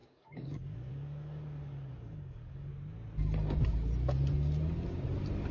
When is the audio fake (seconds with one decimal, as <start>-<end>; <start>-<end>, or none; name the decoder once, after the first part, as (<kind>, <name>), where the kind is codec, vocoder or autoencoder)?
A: 0.0-2.7 (codec, DAC)